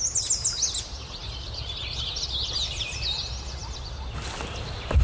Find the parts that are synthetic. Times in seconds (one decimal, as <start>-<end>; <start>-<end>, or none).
none